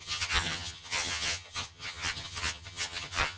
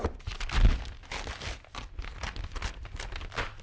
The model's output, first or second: first